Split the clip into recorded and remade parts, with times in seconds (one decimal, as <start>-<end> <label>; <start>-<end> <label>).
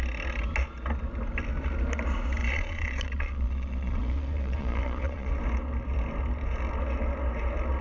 0.0-2.4 recorded; 2.4-5.3 remade; 5.3-7.8 recorded